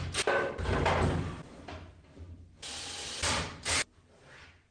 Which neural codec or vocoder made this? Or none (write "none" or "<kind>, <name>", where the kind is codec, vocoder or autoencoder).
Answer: none